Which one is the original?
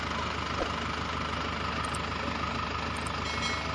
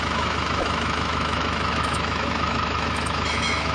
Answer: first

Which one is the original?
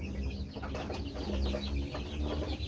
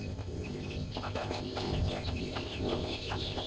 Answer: first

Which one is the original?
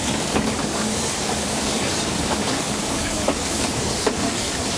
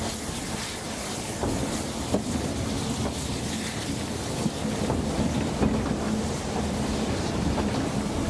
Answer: second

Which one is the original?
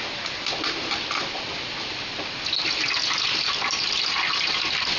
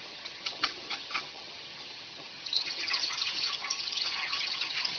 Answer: first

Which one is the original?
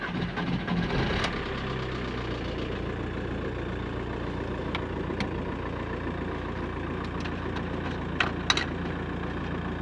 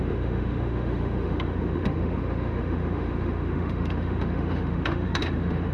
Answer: first